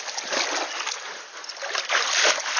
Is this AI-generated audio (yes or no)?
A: no